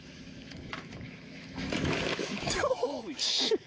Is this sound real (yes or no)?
no